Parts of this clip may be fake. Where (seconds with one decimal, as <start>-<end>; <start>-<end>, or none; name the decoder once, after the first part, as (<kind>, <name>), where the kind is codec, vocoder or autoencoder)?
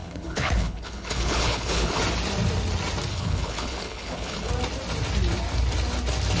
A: 0.0-2.0 (codec, HILCodec); 3.1-4.5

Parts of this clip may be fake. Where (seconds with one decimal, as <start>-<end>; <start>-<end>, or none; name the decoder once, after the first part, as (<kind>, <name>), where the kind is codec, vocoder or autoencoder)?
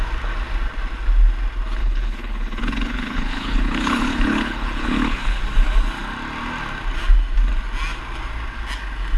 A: 1.8-5.4 (codec, HILCodec)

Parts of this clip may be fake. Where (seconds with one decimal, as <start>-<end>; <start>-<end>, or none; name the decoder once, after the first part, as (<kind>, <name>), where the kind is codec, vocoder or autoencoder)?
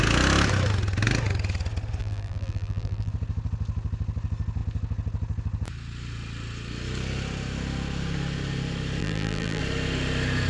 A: 2.0-3.1 (vocoder, BigVGAN v2); 9.0-9.6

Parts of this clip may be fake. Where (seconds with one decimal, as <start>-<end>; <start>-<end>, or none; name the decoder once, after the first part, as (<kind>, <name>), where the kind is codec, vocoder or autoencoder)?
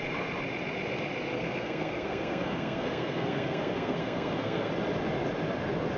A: 1.3-4.7 (codec, SNAC)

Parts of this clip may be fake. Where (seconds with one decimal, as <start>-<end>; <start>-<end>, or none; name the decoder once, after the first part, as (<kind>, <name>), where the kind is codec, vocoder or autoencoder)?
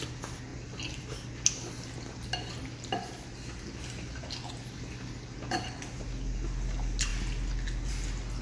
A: none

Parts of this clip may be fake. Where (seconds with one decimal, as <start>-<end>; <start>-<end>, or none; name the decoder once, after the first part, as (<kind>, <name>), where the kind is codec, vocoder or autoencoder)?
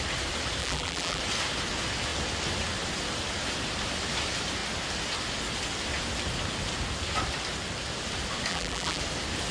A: 0.6-1.2 (vocoder, BigVGAN v2); 8.5-9.0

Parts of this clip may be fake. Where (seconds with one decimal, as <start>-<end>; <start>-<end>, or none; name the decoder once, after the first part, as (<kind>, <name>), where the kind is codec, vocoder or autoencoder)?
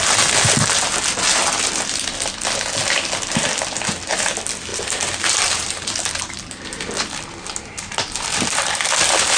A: 4.7-6.1 (vocoder, BigVGAN v2)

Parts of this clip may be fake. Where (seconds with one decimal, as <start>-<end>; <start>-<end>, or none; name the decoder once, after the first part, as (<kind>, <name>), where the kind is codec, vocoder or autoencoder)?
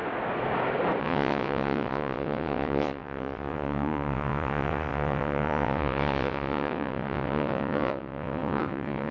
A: 1.0-9.1 (vocoder, WaveNeXt)